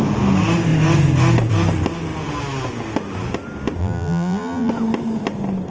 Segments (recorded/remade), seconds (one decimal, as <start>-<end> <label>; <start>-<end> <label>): 0.0-3.8 recorded; 3.8-4.7 remade; 4.7-5.7 recorded